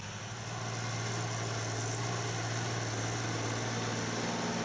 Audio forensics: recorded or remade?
recorded